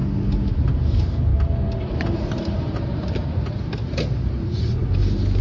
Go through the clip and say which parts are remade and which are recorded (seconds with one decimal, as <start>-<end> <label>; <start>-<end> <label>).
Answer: 0.0-0.5 recorded; 0.5-1.3 remade; 1.3-1.8 recorded; 1.8-5.4 remade